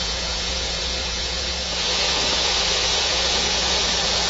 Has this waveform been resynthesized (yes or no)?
yes